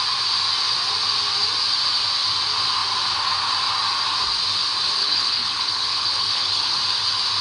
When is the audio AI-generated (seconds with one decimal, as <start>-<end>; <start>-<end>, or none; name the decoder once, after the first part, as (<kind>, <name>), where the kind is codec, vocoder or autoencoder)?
5.0-6.8 (codec, HILCodec)